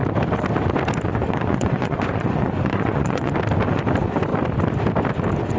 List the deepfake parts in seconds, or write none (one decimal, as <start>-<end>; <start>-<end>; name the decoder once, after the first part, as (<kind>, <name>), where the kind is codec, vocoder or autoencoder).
1.1-3.3 (vocoder, Vocos)